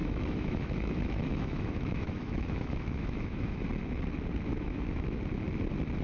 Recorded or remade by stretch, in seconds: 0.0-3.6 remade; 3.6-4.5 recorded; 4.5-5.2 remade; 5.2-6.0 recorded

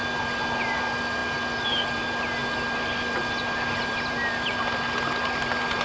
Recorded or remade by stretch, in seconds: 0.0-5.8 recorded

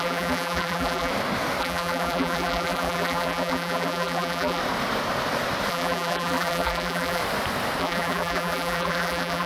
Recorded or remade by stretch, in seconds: 0.0-1.1 remade; 1.1-1.6 recorded; 1.6-4.6 remade; 4.6-5.7 recorded; 5.7-7.2 remade; 7.2-7.8 recorded; 7.8-9.5 remade

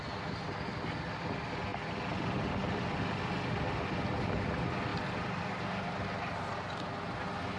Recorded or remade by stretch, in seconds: 0.0-1.7 recorded; 1.7-3.2 remade; 3.2-4.9 recorded; 4.9-6.1 remade; 6.1-7.6 recorded

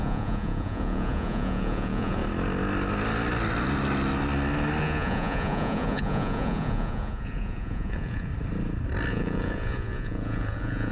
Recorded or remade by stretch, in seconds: 0.0-2.2 remade; 2.2-4.8 recorded; 4.8-8.3 remade; 8.3-9.1 recorded; 9.1-10.9 remade

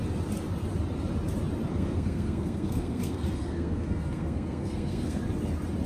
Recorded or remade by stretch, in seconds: 0.0-1.7 recorded; 1.7-5.2 remade; 5.2-5.9 recorded